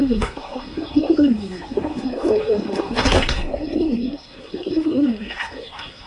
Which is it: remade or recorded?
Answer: remade